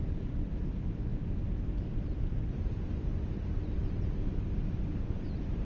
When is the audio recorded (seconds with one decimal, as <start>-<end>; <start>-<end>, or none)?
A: 0.0-5.6